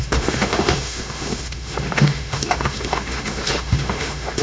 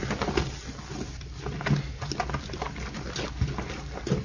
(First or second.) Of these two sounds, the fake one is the first